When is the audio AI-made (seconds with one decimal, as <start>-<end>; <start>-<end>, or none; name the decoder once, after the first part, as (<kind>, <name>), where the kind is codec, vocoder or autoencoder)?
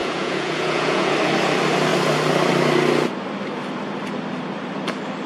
0.0-1.1 (vocoder, Vocos)